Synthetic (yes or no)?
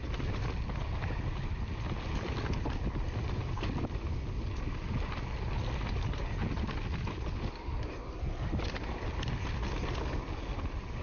no